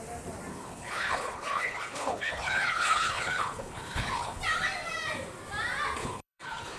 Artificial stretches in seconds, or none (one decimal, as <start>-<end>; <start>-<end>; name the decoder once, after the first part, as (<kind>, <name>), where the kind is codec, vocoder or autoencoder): 0.5-4.4 (codec, HILCodec); 6.0-6.8

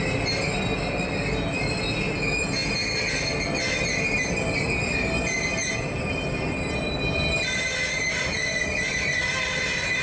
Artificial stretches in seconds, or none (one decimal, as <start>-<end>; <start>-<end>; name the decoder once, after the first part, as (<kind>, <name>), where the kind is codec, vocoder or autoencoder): none

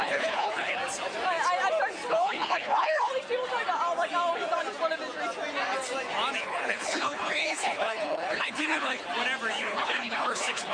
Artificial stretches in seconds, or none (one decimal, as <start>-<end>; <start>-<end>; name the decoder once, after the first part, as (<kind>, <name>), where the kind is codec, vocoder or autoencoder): 0.0-0.8 (codec, HILCodec); 2.1-3.1; 6.4-9.0; 9.6-10.7

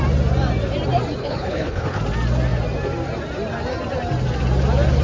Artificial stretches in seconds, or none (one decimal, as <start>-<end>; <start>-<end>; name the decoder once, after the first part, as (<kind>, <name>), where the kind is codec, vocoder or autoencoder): 1.2-2.0 (codec, HILCodec)

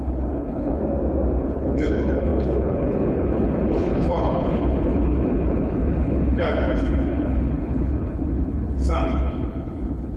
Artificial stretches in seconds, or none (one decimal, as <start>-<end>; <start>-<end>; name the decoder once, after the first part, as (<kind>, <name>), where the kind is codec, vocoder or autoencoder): 0.0-0.8 (codec, HILCodec); 1.4-10.2

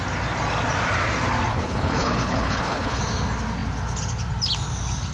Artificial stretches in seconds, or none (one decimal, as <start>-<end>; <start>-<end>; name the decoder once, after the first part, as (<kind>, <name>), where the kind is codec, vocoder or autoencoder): 1.5-3.0 (codec, HILCodec)